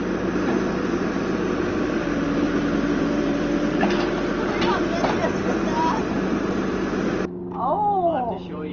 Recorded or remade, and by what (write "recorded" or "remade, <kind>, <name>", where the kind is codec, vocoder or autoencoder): remade, vocoder, BigVGAN v2